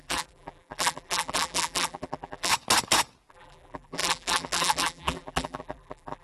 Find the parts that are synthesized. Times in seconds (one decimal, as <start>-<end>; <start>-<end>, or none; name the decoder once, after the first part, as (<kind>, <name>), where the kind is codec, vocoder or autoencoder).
0.0-2.5 (vocoder, BigVGAN v2); 3.3-6.2